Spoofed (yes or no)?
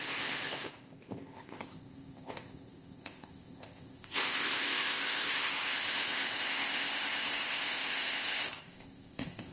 yes